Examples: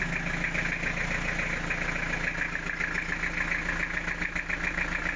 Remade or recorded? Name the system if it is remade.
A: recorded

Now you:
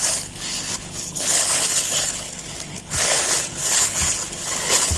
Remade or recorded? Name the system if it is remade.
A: remade, codec, HILCodec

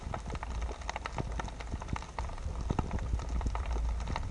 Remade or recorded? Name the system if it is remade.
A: recorded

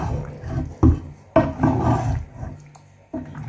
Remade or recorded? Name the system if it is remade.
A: recorded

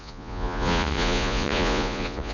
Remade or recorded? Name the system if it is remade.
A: remade, vocoder, Vocos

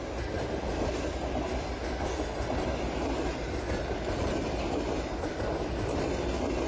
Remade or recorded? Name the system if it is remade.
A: recorded